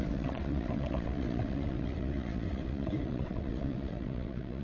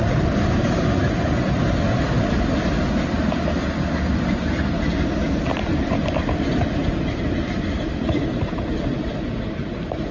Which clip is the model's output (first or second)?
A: first